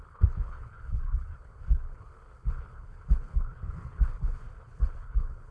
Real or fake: fake